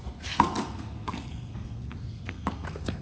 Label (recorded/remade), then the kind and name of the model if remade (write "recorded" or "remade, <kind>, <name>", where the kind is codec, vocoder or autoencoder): remade, codec, SNAC